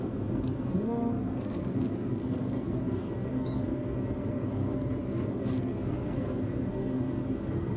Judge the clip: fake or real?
fake